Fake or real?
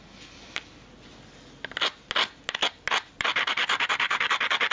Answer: real